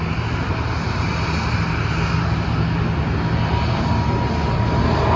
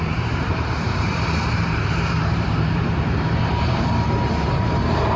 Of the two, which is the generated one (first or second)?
second